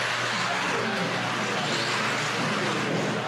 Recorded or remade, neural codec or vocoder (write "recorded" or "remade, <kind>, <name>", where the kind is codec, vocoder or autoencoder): recorded